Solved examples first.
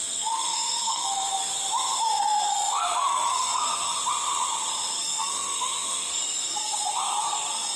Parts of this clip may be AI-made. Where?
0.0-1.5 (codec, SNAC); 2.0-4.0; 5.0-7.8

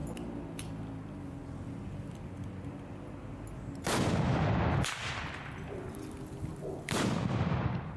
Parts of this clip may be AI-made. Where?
none

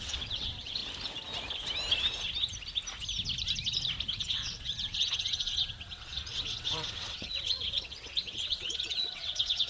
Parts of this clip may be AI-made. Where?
0.0-0.8 (vocoder, WaveNeXt); 4.1-9.7

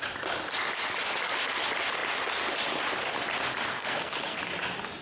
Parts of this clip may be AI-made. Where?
3.7-4.4 (codec, SNAC)

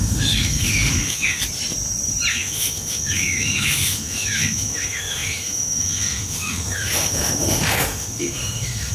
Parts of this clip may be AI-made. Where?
0.0-1.4 (autoencoder, DAC-VAE); 2.3-8.9